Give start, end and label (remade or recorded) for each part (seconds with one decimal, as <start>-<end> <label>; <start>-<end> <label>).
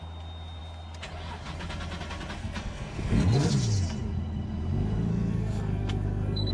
0.0-2.4 recorded; 2.4-3.5 remade; 3.5-5.1 recorded; 5.1-6.5 remade